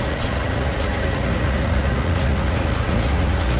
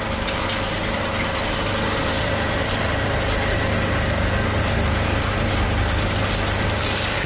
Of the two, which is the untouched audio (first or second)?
second